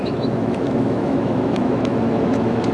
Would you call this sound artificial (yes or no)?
yes